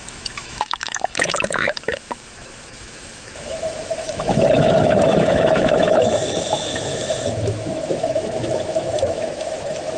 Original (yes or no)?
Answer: no